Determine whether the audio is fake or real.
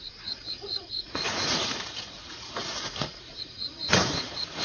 fake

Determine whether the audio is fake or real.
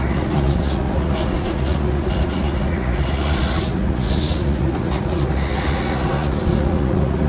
fake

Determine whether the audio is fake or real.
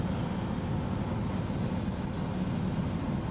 real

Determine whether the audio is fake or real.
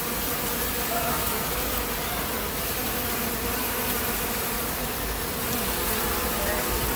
real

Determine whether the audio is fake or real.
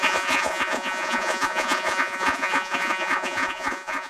fake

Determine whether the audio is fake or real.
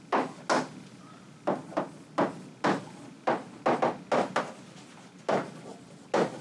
real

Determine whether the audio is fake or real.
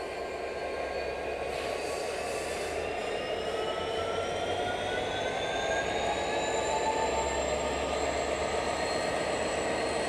real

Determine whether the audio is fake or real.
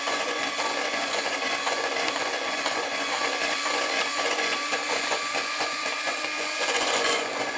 fake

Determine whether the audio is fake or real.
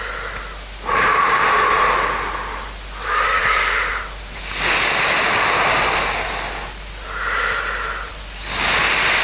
real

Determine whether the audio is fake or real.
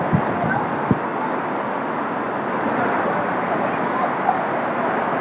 real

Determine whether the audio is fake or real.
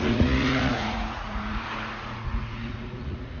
fake